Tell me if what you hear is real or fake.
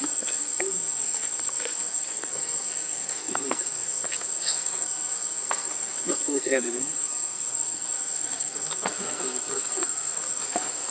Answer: fake